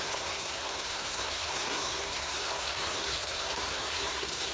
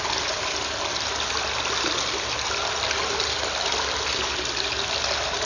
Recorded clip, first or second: second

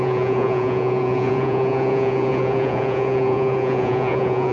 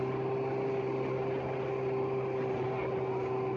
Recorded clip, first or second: second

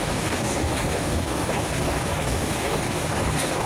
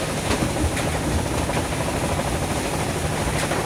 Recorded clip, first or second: second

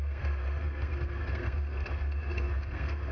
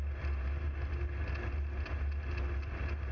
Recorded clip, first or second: second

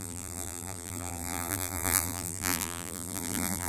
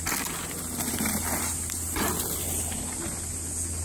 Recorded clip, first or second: second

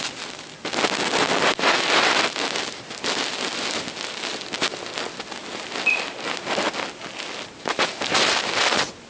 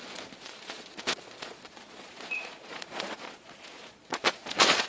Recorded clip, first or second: first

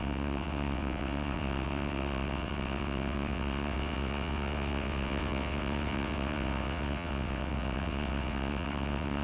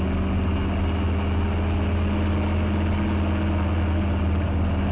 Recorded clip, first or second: second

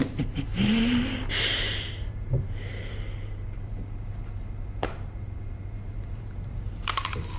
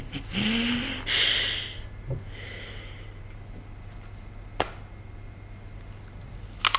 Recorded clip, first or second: second